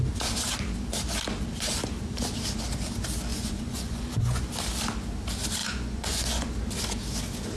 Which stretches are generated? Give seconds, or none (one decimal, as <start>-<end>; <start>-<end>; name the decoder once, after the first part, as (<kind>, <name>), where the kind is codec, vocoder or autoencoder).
3.3-4.4 (vocoder, Vocos); 5.6-6.5